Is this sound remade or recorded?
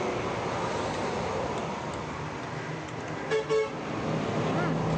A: recorded